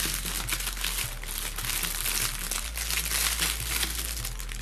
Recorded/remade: recorded